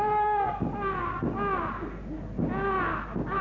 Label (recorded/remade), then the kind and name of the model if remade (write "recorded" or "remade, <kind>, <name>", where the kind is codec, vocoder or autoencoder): recorded